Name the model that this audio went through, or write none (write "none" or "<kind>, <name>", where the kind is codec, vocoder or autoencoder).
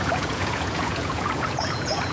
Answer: vocoder, Vocos